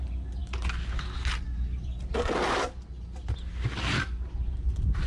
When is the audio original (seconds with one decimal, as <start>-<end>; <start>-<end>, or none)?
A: 0.0-5.1